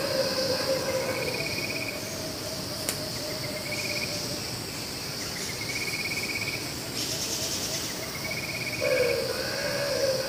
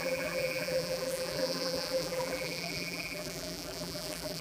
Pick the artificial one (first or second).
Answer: second